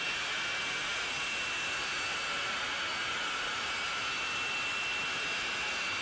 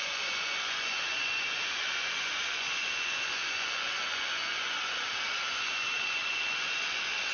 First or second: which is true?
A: first